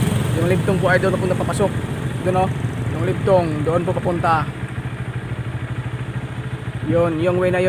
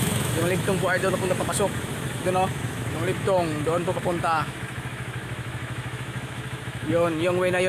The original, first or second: first